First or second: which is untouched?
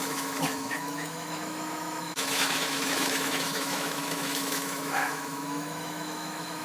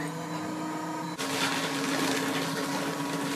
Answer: second